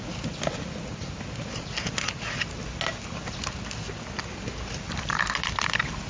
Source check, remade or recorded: recorded